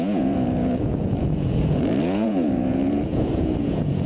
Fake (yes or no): yes